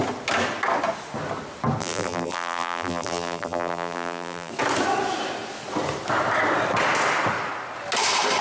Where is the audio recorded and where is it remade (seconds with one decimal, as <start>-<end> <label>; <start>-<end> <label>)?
0.0-1.8 recorded; 1.8-4.5 remade; 4.5-8.4 recorded